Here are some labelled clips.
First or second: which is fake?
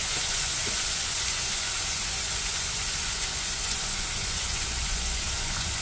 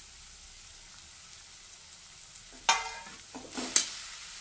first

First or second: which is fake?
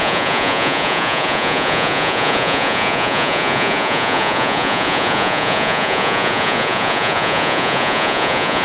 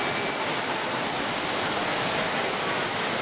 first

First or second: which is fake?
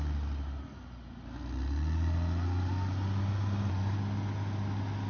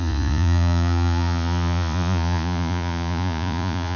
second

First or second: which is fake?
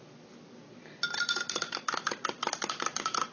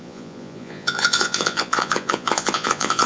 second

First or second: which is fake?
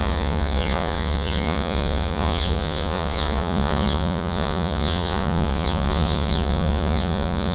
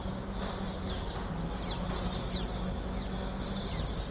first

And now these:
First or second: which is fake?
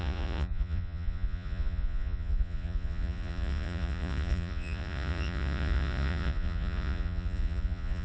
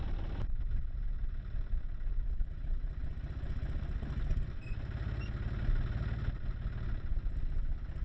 first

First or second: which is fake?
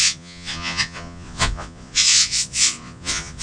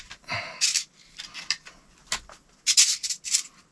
first